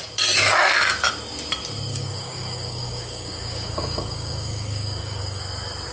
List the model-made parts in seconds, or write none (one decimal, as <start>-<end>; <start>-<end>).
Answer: 1.9-5.4